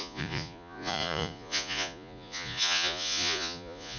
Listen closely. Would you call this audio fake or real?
fake